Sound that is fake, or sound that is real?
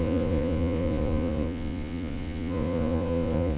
fake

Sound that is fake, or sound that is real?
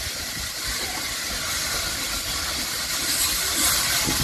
real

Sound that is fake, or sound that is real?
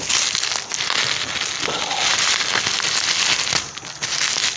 real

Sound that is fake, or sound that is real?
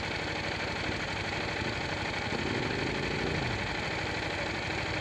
real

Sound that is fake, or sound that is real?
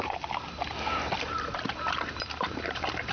real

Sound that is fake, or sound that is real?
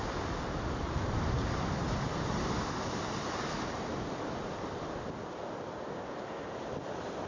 real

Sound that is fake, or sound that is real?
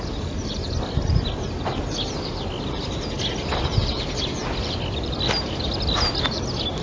real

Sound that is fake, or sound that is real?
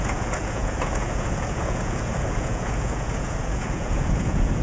fake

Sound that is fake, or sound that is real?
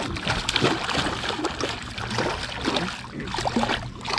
real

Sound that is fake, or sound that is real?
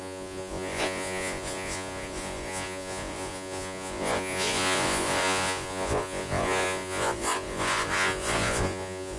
fake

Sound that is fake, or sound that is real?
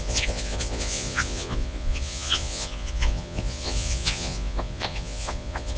fake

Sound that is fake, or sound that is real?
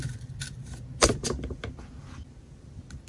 real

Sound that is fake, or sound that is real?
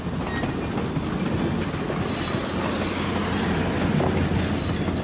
real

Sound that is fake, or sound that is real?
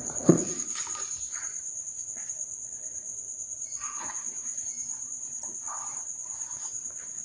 fake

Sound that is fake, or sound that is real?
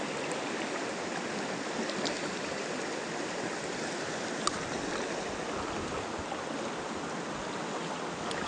real